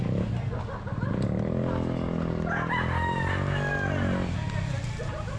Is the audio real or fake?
real